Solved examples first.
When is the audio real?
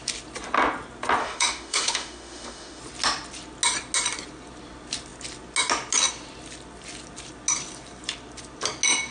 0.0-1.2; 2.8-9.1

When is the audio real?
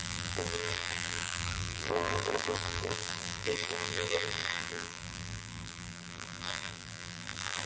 none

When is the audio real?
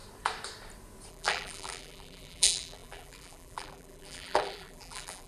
0.0-1.1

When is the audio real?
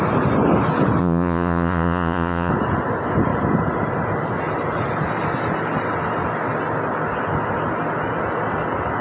0.0-1.0; 2.5-9.0